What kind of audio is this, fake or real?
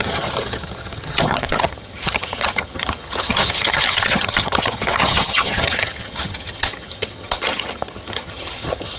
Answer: fake